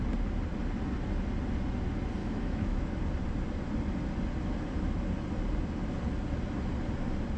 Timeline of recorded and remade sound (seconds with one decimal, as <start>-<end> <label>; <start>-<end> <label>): 0.0-2.2 recorded; 2.2-3.0 remade; 3.0-7.4 recorded